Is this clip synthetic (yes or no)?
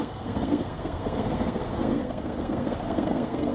yes